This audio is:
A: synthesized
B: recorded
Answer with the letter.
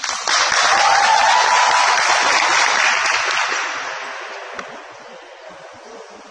B